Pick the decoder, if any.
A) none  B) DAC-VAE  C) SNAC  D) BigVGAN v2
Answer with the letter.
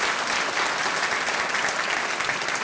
A